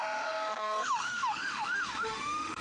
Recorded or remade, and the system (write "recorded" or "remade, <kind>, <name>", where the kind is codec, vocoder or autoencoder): remade, autoencoder, DAC-VAE